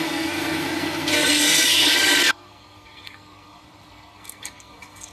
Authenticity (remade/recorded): remade